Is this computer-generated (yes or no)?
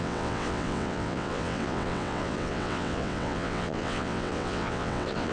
yes